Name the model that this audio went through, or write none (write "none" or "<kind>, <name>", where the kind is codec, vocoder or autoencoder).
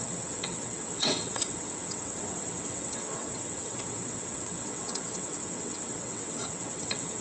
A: vocoder, WaveNeXt